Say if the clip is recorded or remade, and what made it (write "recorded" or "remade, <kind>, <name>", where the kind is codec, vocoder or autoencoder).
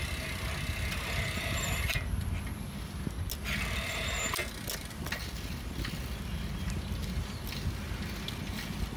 recorded